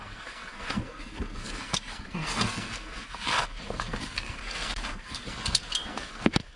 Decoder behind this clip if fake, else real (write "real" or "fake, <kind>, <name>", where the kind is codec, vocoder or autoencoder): fake, codec, SNAC